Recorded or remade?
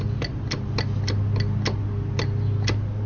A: recorded